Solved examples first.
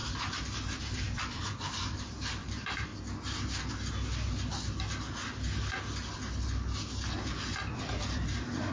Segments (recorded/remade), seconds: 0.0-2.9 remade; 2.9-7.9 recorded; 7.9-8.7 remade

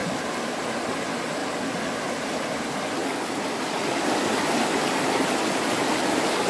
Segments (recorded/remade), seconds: 0.0-6.5 recorded